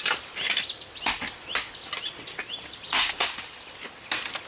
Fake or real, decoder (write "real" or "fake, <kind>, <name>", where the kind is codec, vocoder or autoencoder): real